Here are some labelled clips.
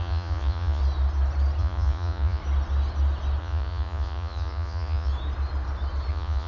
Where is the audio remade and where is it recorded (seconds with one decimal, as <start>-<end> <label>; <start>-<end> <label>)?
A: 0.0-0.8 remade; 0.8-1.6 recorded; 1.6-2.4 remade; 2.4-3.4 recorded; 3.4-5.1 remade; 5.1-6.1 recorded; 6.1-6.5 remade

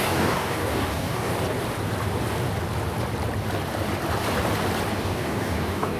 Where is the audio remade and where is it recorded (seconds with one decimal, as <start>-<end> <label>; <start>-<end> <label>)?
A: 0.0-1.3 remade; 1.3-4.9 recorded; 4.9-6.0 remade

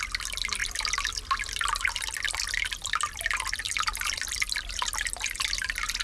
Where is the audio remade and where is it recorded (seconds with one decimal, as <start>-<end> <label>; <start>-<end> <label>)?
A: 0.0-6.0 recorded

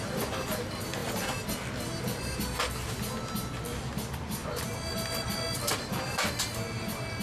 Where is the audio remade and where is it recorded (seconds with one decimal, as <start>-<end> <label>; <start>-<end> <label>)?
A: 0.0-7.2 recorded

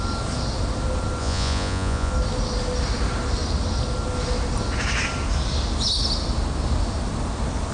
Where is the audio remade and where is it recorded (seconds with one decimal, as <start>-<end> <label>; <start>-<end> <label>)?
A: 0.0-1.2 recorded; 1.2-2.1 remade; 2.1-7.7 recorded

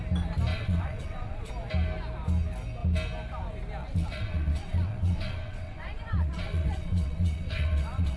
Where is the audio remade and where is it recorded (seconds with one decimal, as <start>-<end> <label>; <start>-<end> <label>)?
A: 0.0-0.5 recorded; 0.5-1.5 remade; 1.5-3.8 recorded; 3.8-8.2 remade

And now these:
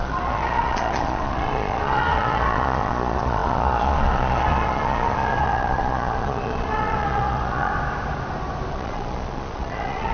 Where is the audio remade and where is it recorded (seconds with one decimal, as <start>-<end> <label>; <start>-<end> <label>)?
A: 0.0-7.7 remade; 7.7-8.7 recorded; 8.7-10.1 remade

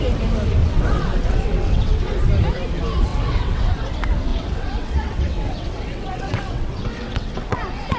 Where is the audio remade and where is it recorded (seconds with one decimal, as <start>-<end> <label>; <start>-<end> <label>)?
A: 0.0-0.6 recorded; 0.6-2.2 remade; 2.2-3.1 recorded; 3.1-3.9 remade; 3.9-4.3 recorded; 4.3-8.0 remade